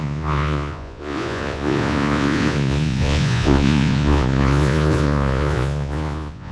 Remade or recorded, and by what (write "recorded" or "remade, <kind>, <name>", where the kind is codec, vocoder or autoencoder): remade, vocoder, Vocos